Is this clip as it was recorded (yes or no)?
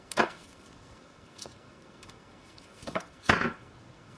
no